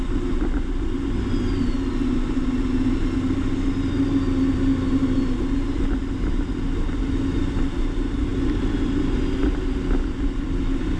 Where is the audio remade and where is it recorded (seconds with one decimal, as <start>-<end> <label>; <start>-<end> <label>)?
0.0-11.0 recorded

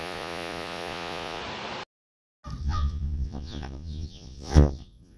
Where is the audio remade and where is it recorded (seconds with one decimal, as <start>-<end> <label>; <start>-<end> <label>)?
0.0-1.4 remade; 1.4-2.6 recorded; 2.6-5.2 remade